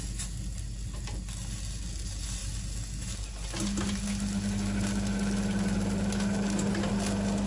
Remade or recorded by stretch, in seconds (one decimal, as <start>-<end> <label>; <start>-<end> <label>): 0.0-7.5 recorded